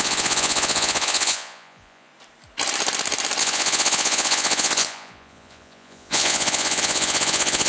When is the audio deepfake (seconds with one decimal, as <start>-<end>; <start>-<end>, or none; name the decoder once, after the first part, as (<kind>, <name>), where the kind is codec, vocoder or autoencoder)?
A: 0.0-2.1 (vocoder, Vocos); 3.4-7.7